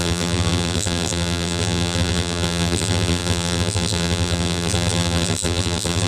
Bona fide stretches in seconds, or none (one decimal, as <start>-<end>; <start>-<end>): none